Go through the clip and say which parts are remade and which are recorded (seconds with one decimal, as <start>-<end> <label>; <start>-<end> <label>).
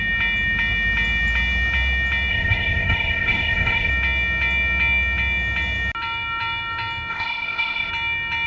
0.0-2.3 recorded; 2.3-3.9 remade; 3.9-7.1 recorded; 7.1-7.9 remade; 7.9-8.5 recorded